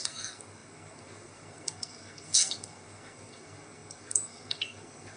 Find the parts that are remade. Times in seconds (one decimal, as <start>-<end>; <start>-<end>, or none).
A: 0.0-5.2